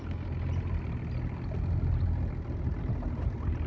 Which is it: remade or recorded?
recorded